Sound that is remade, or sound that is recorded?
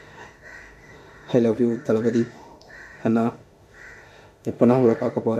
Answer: remade